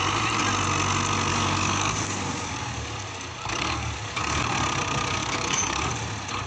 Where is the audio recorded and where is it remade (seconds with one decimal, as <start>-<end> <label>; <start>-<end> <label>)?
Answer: 0.0-1.3 recorded; 1.3-4.2 remade; 4.2-5.2 recorded; 5.2-5.9 remade; 5.9-6.5 recorded